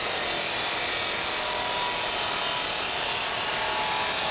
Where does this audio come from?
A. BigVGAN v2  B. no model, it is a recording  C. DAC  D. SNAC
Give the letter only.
B